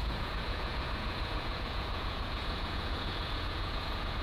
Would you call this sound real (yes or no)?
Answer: no